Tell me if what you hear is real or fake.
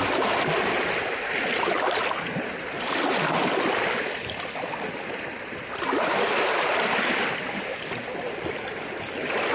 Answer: real